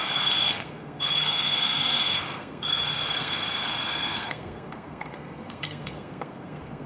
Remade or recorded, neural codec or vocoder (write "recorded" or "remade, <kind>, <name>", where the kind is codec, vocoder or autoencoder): remade, codec, SNAC